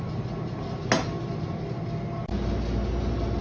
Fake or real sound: real